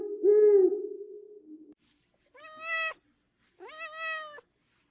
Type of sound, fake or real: real